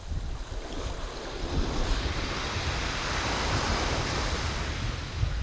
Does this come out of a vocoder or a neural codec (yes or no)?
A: no